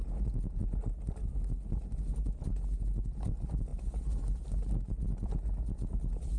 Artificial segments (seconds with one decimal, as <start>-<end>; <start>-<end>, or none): none